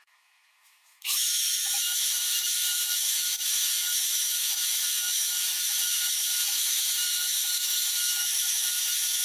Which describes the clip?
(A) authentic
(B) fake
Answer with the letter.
B